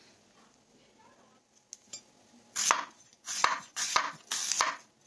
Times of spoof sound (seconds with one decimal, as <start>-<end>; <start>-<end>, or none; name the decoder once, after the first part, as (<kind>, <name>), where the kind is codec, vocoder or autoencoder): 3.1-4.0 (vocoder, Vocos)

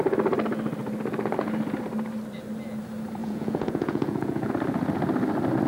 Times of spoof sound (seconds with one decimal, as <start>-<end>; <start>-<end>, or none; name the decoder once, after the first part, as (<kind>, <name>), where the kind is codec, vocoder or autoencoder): 3.2-4.5 (vocoder, Vocos)

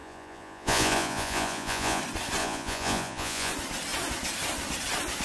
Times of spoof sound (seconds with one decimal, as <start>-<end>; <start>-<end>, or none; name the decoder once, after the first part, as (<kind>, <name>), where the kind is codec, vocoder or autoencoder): 0.0-2.0 (vocoder, Vocos); 2.4-3.5

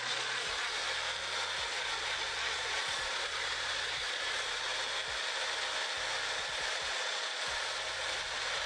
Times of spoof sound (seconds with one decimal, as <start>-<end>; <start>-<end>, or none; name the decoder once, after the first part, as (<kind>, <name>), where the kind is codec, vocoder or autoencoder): 0.0-0.8 (vocoder, Vocos); 1.8-4.7; 6.4-8.7